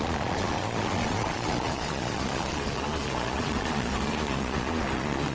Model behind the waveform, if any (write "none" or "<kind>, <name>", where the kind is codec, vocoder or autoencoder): vocoder, Vocos